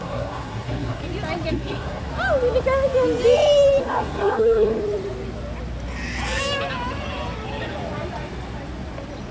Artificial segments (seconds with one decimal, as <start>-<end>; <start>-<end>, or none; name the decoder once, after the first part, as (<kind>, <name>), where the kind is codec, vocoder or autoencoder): 0.0-1.0 (codec, SNAC); 1.5-2.1; 3.8-4.8